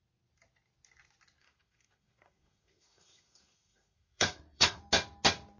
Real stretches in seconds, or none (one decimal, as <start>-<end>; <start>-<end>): 0.0-1.4; 4.8-5.6